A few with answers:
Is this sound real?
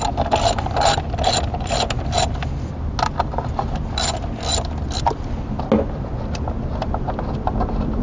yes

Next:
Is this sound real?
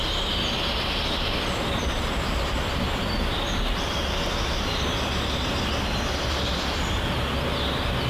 yes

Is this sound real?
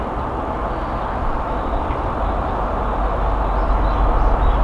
yes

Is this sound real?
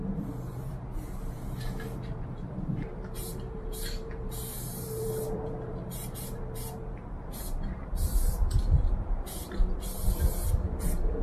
no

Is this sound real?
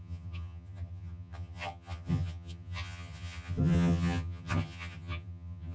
no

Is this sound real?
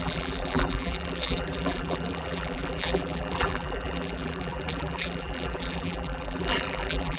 no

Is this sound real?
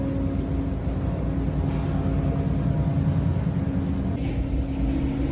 yes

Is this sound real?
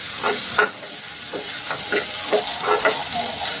yes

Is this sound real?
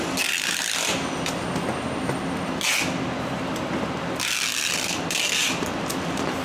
yes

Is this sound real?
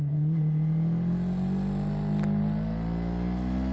yes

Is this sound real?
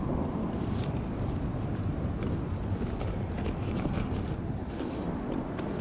yes